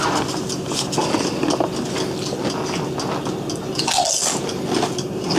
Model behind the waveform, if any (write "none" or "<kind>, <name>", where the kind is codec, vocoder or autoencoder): none